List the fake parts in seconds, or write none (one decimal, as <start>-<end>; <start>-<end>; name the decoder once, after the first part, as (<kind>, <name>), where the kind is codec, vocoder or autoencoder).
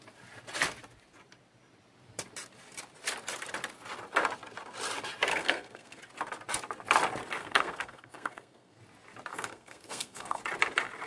5.3-6.0 (codec, SNAC); 7.4-8.8; 9.3-10.4